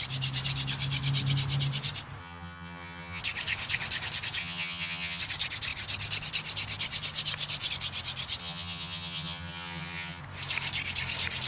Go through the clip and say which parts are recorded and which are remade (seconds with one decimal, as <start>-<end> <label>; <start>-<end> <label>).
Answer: 0.0-2.2 recorded; 2.2-3.2 remade; 3.2-4.4 recorded; 4.4-5.2 remade; 5.2-8.4 recorded; 8.4-10.2 remade; 10.2-11.5 recorded